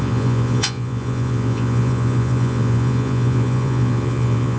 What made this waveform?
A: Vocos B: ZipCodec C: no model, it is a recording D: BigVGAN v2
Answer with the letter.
A